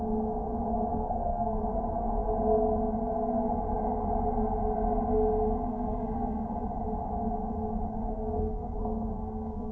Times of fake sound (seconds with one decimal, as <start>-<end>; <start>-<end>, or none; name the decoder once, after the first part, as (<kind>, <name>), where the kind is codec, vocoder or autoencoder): 0.9-1.6 (codec, SNAC); 5.7-6.5; 7.9-9.7